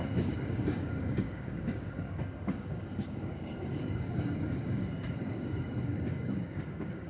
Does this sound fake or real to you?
fake